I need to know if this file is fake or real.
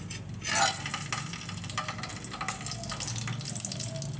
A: real